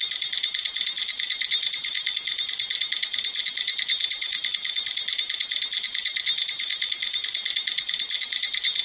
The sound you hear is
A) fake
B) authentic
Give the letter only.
B